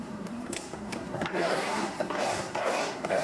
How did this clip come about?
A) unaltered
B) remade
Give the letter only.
B